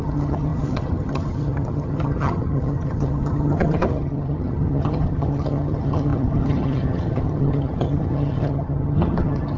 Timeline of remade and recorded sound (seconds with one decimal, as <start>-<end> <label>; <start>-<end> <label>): 0.0-9.6 remade